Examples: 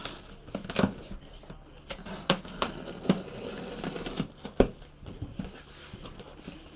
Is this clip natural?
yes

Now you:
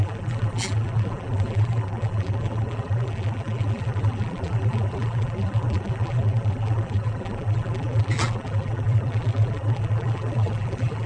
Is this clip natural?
no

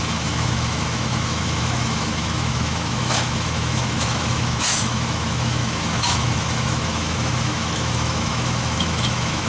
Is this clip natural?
no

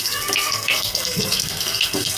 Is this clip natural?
no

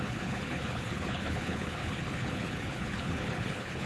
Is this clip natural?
no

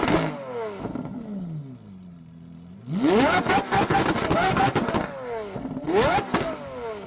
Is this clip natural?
yes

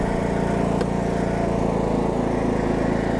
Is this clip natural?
yes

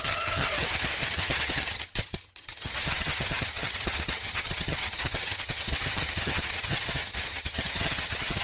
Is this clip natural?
no